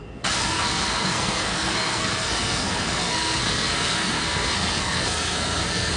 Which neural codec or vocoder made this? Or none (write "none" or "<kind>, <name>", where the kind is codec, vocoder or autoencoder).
codec, SNAC